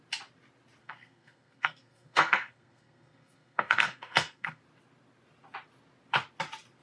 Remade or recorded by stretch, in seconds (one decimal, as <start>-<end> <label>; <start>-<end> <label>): 0.0-0.8 recorded; 0.8-4.6 remade; 4.6-6.8 recorded